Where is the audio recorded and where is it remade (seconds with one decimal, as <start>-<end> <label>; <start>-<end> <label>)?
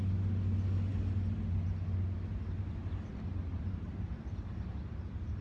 0.0-3.5 recorded; 3.5-4.3 remade; 4.3-5.4 recorded